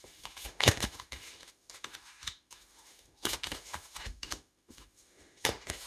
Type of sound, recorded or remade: remade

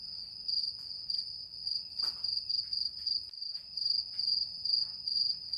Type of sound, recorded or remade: recorded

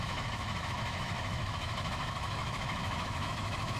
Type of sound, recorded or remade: remade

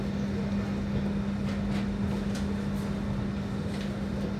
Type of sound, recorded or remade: recorded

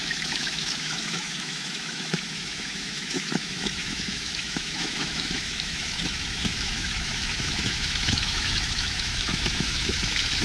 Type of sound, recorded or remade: remade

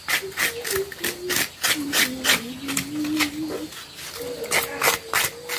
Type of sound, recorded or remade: recorded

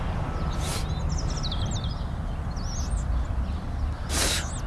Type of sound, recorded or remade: recorded